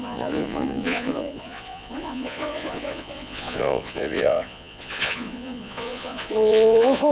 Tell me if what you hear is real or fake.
fake